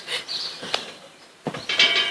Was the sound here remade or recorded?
recorded